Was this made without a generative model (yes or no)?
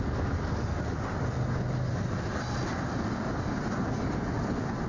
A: yes